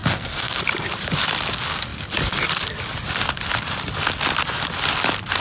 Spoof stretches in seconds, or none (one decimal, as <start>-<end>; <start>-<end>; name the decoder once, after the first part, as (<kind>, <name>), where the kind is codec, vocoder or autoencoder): 0.0-0.6 (codec, SNAC)